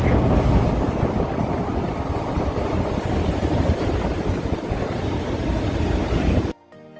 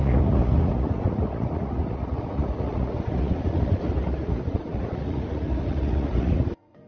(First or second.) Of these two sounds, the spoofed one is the second